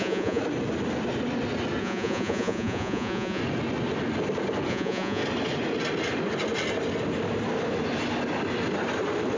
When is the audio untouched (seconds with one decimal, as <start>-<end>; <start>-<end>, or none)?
0.4-1.8; 3.4-4.7; 5.2-9.4